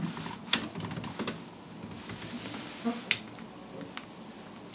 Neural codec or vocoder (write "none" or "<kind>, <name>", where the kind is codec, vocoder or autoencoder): none